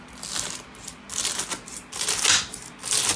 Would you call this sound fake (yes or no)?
no